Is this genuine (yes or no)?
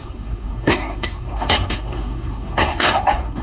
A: no